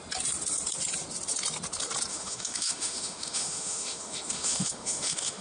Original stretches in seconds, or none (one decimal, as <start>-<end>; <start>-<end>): 0.0-2.1